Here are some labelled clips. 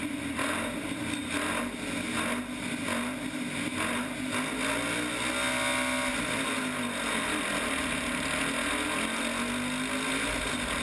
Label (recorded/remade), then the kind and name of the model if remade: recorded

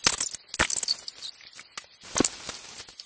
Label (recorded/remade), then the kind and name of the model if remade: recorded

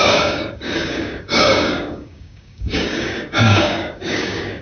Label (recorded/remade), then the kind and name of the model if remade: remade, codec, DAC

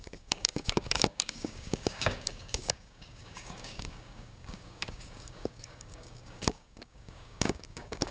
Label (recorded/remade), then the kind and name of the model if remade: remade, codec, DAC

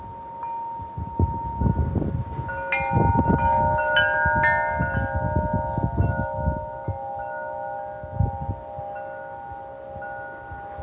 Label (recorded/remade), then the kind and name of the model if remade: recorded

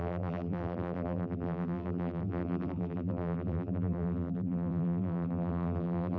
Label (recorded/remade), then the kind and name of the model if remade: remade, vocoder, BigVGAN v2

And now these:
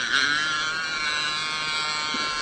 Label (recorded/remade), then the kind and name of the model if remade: recorded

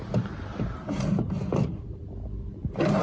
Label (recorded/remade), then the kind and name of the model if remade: recorded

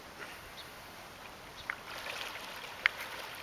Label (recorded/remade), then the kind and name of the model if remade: recorded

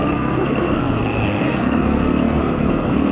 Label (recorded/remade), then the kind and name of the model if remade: remade, codec, SNAC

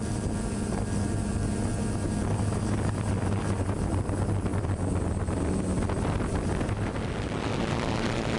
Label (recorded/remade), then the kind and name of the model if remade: recorded